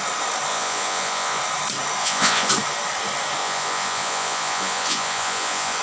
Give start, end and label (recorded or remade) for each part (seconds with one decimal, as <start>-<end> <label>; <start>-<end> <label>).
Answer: 0.0-0.5 recorded; 0.5-1.4 remade; 1.4-2.0 recorded; 2.0-2.5 remade; 2.5-3.4 recorded; 3.4-5.8 remade